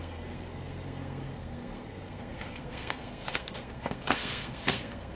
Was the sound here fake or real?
fake